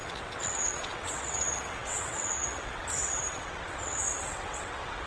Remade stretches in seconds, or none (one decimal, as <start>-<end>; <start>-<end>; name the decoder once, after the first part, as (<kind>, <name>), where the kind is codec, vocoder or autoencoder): 0.0-5.1 (vocoder, WaveNeXt)